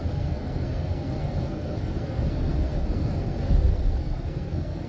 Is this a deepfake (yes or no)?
yes